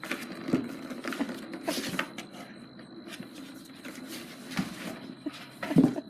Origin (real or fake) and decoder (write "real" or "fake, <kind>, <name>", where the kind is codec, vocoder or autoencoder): real